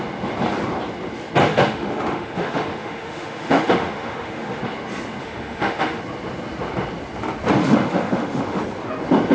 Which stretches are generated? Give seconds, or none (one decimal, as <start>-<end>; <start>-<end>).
1.4-4.6; 5.2-6.0; 7.6-8.6